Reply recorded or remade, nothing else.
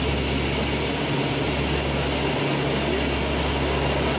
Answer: recorded